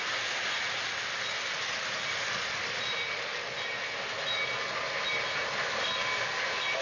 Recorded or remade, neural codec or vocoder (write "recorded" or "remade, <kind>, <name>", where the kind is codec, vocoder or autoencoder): recorded